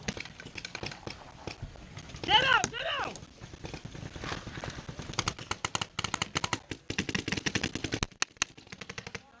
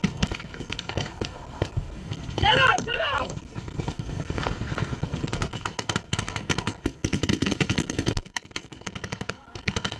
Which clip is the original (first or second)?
first